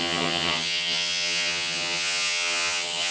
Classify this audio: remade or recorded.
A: remade